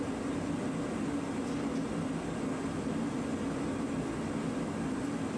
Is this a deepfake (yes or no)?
no